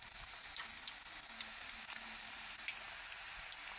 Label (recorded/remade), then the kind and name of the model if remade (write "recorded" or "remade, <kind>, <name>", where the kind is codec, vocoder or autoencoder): recorded